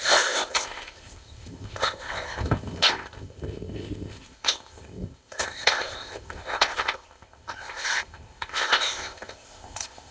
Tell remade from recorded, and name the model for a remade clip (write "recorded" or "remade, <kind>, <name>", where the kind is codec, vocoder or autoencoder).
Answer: remade, codec, ZipCodec